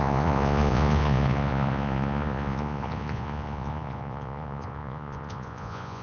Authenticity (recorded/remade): remade